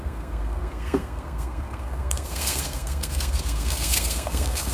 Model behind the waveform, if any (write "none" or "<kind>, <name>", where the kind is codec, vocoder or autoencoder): codec, SNAC